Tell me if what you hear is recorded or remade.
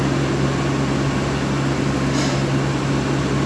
recorded